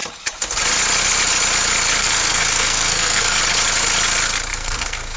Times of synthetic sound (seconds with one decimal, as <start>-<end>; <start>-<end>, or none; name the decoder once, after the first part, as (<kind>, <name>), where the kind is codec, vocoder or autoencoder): 2.0-3.4 (codec, SNAC); 4.5-5.2